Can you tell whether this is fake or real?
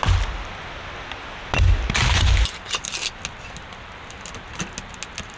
real